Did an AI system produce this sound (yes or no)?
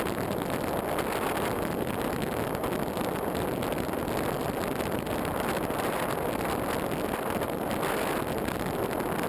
no